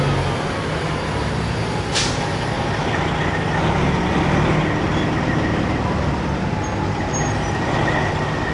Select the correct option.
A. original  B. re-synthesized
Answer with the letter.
A